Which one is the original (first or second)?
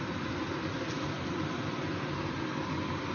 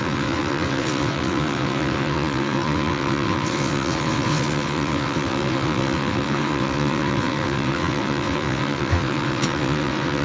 first